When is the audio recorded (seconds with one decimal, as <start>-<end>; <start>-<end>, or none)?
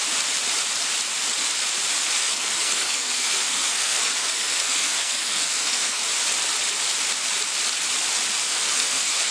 0.0-2.2; 6.0-8.4